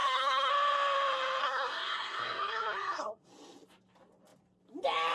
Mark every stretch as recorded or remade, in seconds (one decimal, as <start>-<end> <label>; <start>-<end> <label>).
0.0-0.5 remade; 0.5-1.4 recorded; 1.4-3.3 remade; 3.3-5.1 recorded